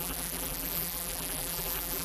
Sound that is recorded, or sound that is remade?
remade